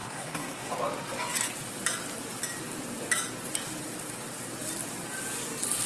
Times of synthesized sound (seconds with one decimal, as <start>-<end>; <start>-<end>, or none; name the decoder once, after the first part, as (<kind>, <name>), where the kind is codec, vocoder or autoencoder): 0.0-0.7 (codec, SNAC)